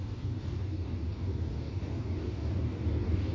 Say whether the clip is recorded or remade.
remade